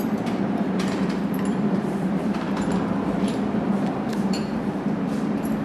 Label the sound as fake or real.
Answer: fake